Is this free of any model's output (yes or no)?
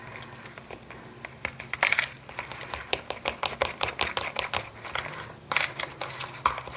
yes